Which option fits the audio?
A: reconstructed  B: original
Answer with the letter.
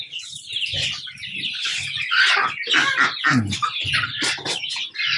B